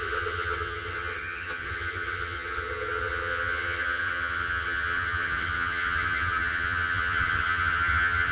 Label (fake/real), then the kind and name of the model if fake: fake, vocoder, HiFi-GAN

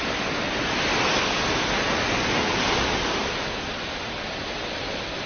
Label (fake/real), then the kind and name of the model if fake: real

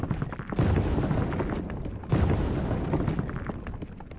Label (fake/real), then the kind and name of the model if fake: real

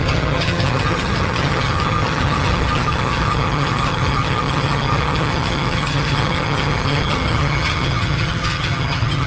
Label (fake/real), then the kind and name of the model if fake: fake, vocoder, HiFi-GAN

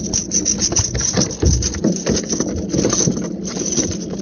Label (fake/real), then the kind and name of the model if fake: real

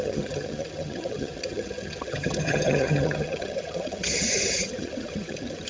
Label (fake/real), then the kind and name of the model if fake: fake, vocoder, HiFi-GAN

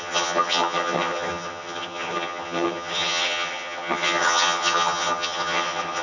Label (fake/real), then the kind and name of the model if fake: fake, vocoder, HiFi-GAN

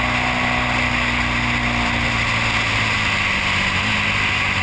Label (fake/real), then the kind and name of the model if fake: real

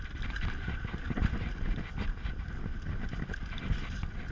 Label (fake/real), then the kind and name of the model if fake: real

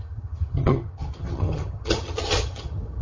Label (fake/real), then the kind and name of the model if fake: fake, vocoder, HiFi-GAN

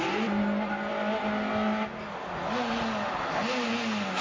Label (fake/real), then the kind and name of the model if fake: real